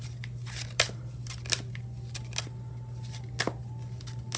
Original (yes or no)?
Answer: yes